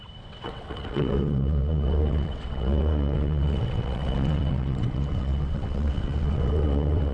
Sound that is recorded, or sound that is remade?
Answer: remade